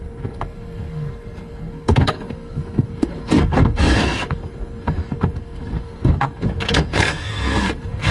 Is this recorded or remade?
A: remade